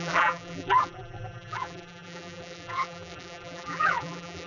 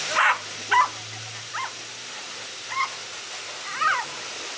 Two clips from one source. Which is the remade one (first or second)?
first